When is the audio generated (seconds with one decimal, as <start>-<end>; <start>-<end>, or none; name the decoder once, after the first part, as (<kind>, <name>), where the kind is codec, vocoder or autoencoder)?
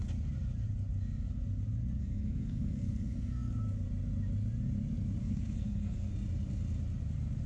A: 2.0-3.6 (codec, SNAC); 5.2-6.1